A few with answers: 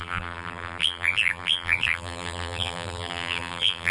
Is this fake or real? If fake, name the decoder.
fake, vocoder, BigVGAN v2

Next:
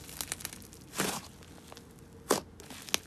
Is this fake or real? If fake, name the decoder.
real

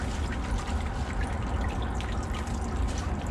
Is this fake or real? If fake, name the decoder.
real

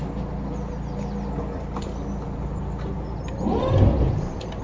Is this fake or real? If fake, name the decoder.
real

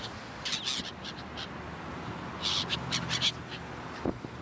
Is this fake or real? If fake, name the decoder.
real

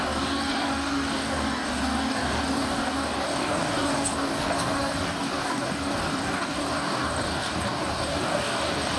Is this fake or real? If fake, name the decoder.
fake, codec, DAC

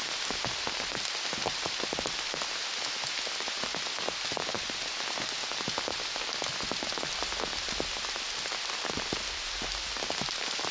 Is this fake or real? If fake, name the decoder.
real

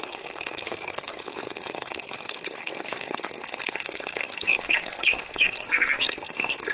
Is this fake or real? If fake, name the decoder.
fake, codec, SNAC